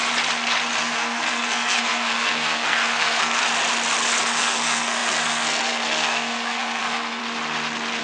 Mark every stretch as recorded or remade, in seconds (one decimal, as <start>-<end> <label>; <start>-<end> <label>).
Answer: 0.0-0.8 recorded; 0.8-3.4 remade; 3.4-4.2 recorded; 4.2-7.2 remade; 7.2-8.0 recorded